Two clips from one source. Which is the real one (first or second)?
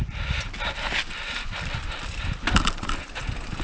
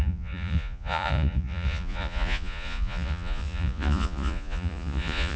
first